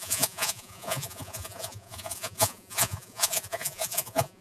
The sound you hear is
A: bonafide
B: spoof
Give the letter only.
B